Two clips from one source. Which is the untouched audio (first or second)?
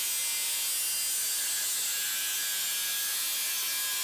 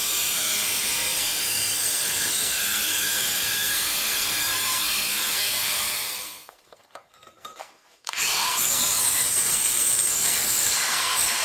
first